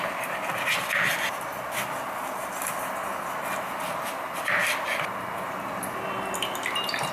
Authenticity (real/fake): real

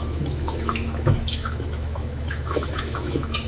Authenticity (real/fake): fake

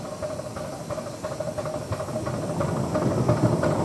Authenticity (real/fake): real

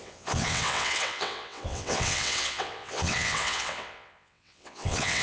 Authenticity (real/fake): fake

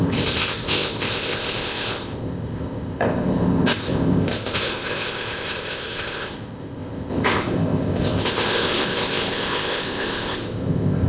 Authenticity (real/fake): fake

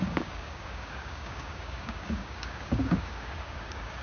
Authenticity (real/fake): fake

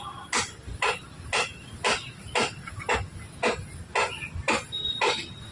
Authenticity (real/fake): real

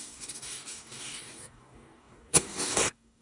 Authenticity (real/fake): fake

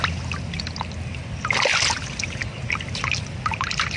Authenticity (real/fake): real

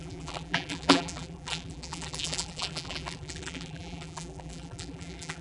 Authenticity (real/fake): fake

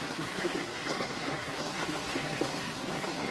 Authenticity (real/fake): fake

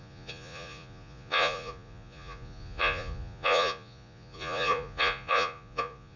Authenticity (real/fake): fake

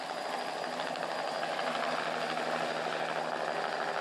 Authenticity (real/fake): real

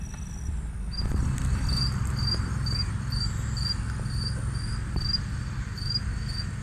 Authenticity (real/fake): real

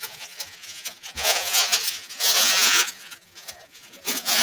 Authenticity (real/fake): fake